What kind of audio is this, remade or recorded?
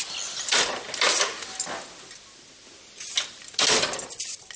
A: recorded